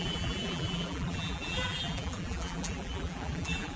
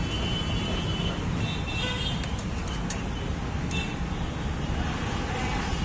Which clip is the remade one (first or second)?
first